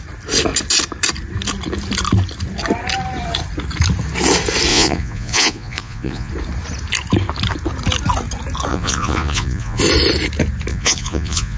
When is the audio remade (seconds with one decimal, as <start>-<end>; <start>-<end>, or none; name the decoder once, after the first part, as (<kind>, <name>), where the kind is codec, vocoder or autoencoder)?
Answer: 4.7-6.3 (vocoder, Vocos); 8.7-9.8; 10.7-11.6